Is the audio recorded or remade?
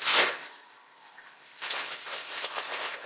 remade